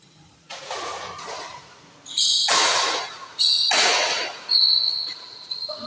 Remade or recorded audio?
remade